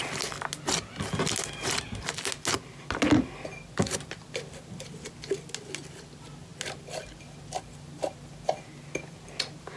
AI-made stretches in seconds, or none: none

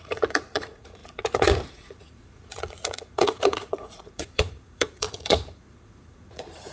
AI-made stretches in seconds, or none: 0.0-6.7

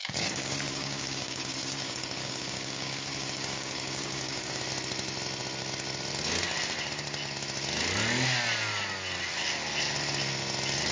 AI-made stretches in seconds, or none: 0.0-4.6